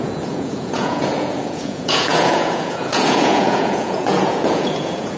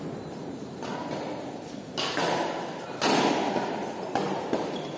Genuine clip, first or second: second